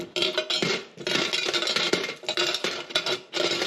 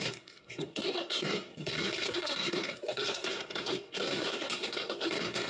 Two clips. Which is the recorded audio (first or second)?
first